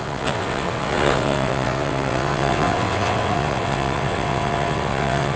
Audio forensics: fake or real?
fake